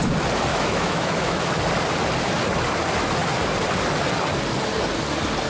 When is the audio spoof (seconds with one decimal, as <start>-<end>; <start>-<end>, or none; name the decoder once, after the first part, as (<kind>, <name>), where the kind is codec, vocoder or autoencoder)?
0.5-1.5 (autoencoder, DAC-VAE)